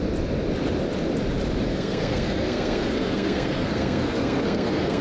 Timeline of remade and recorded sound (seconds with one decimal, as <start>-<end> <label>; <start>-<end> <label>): 0.0-1.7 recorded; 1.7-5.0 remade